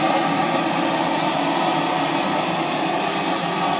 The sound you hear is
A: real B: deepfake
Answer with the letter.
A